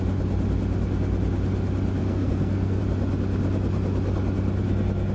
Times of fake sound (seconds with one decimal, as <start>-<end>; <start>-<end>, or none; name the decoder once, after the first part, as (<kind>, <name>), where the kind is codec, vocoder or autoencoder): 2.0-2.8 (codec, SNAC)

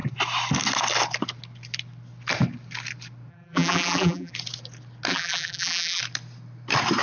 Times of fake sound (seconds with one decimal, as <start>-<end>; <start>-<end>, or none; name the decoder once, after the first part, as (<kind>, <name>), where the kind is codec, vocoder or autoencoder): 3.3-4.3 (vocoder, BigVGAN v2); 5.1-6.0